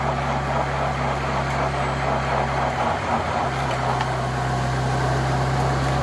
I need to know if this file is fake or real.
real